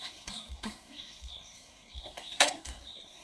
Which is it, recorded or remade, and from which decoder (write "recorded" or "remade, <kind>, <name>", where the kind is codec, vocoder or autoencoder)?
remade, codec, SNAC